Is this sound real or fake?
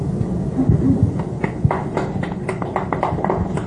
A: real